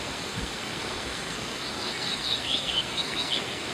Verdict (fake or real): fake